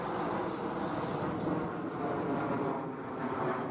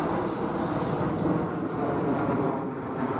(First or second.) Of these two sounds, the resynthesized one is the second